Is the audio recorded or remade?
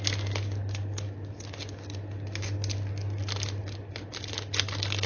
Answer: recorded